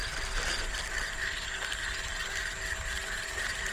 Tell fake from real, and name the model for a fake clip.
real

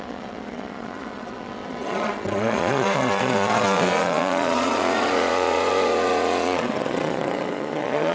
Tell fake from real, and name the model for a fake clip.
fake, vocoder, Vocos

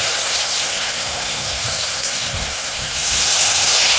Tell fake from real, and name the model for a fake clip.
fake, codec, SNAC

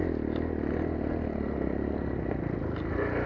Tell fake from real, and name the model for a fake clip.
real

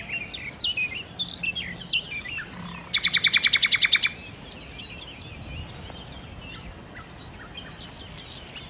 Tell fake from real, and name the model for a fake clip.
real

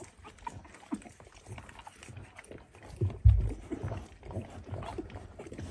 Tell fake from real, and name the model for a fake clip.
real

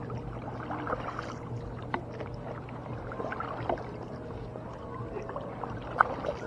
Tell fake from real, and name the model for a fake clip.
real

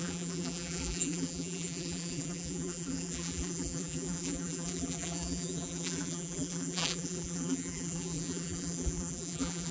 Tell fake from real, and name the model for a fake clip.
fake, vocoder, BigVGAN v2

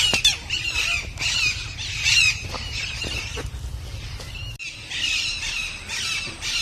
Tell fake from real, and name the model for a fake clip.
real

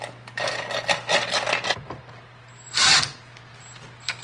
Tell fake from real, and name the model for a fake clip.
real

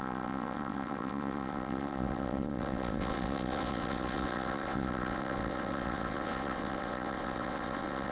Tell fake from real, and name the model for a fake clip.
fake, vocoder, WaveNeXt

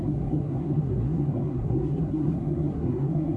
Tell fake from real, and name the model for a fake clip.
fake, codec, SNAC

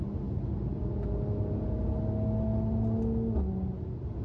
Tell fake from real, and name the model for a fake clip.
real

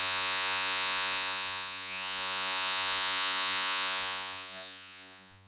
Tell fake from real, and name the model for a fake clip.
fake, vocoder, Vocos